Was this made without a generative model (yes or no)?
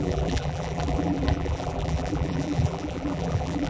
no